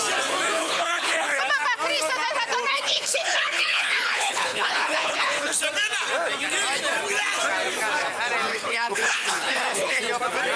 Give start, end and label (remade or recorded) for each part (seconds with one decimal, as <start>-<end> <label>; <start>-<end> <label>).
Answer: 0.0-0.6 recorded; 0.6-1.4 remade; 1.4-2.7 recorded; 2.7-5.5 remade; 5.5-8.5 recorded; 8.5-10.0 remade; 10.0-10.6 recorded